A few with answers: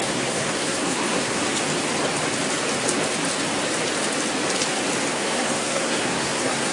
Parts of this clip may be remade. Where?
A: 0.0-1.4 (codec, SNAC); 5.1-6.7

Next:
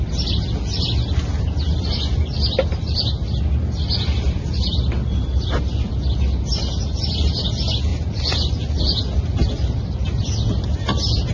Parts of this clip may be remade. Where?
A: none